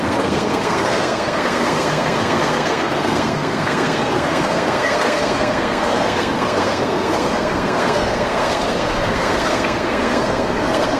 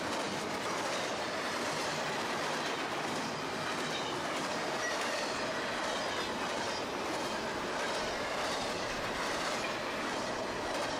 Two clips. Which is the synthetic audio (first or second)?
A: first